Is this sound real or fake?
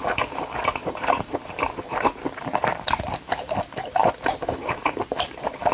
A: fake